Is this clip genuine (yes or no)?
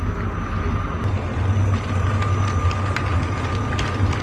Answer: yes